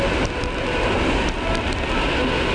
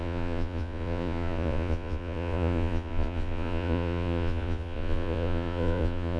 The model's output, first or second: second